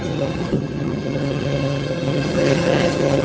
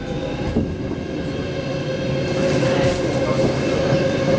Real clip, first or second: second